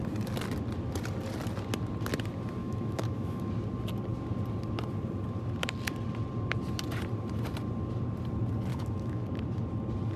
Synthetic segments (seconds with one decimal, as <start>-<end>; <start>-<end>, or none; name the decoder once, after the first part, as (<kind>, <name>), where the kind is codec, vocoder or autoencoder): 2.6-3.5 (autoencoder, DAC-VAE); 8.7-9.2